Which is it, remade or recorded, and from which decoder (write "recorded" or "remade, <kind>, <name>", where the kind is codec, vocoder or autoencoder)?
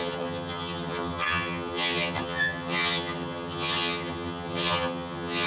remade, vocoder, HiFi-GAN